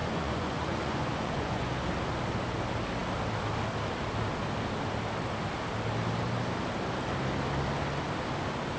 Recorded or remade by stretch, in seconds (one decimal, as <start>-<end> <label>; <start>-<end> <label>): 0.0-1.7 remade; 1.7-8.8 recorded